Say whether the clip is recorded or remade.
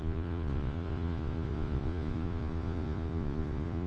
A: remade